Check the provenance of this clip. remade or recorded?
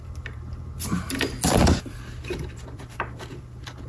remade